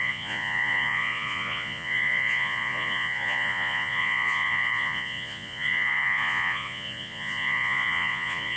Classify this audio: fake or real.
fake